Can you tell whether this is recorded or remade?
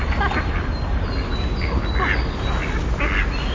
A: recorded